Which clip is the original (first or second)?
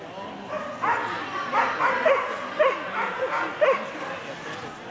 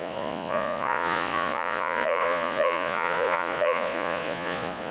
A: first